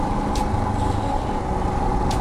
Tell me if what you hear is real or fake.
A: real